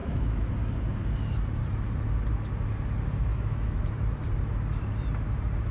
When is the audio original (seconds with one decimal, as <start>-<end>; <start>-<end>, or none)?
0.5-3.3; 3.8-5.7